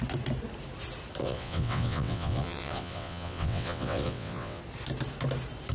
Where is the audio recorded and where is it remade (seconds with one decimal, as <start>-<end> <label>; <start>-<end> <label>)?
0.0-1.2 recorded; 1.2-4.6 remade; 4.6-5.7 recorded

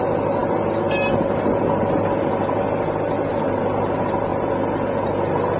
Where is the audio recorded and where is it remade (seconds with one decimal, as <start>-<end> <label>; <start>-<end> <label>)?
0.0-5.6 recorded